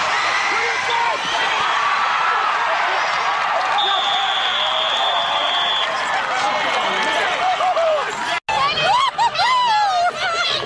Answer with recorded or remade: recorded